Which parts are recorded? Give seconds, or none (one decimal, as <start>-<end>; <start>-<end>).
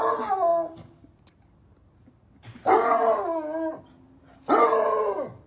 0.0-5.5